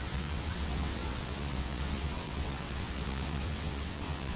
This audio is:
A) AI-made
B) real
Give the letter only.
A